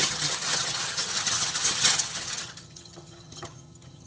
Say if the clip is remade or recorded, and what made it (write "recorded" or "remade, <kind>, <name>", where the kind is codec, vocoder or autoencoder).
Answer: remade, vocoder, HiFi-GAN